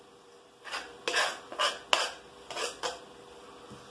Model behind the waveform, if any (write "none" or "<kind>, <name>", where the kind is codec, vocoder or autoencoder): none